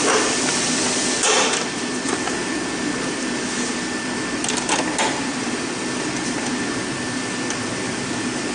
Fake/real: real